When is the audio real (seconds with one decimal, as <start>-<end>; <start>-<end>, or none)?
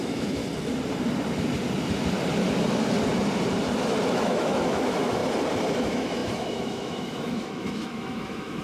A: 0.4-4.1; 5.2-5.8